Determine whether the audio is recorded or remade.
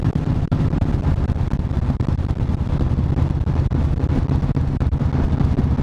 recorded